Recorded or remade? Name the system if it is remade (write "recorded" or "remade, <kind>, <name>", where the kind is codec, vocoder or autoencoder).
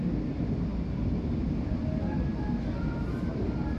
recorded